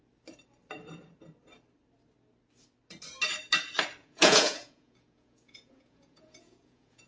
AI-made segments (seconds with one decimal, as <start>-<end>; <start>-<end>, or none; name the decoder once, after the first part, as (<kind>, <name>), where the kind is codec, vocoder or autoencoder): 4.0-7.1 (vocoder, Vocos)